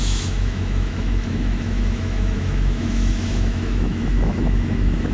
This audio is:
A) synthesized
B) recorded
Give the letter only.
A